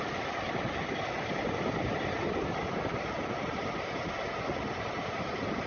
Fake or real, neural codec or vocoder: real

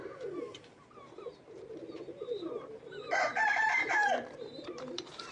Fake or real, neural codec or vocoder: fake, vocoder, BigVGAN v2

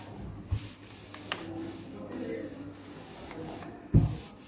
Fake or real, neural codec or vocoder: real